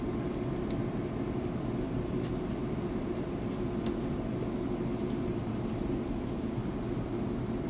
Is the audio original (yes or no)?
yes